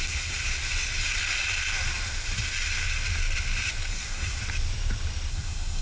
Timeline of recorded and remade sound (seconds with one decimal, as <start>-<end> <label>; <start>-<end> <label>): 0.0-0.4 remade; 0.4-3.9 recorded; 3.9-4.4 remade; 4.4-5.3 recorded; 5.3-5.8 remade